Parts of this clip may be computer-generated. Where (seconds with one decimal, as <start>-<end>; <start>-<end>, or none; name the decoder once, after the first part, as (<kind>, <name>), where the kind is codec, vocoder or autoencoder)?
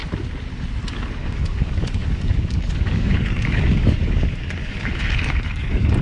0.9-6.0 (codec, DAC)